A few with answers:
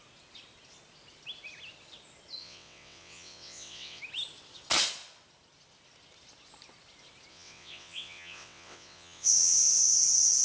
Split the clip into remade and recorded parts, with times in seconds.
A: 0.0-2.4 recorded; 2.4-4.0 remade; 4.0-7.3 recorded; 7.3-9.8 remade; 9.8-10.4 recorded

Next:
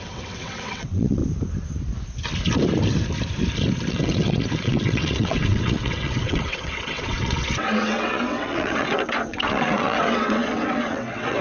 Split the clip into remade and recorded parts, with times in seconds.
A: 0.0-1.2 remade; 1.2-3.9 recorded; 3.9-11.4 remade

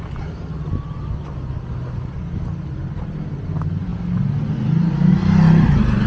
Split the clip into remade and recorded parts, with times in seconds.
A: 0.0-6.1 recorded